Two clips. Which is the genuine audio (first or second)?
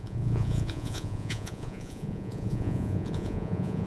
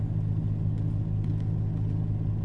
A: second